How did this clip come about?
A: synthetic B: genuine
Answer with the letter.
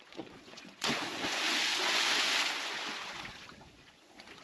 A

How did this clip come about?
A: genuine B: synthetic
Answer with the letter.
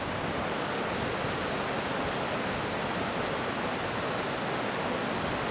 A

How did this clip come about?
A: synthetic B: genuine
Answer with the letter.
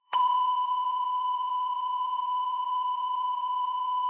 A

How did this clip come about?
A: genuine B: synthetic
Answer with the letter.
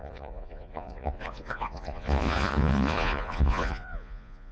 B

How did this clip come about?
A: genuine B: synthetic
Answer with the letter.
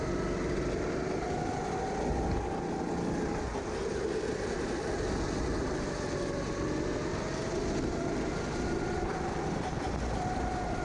A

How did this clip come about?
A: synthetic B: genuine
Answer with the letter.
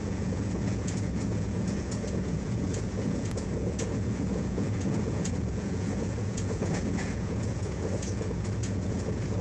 A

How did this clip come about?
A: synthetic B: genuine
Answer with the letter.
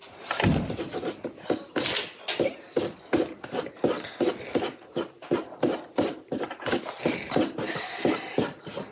B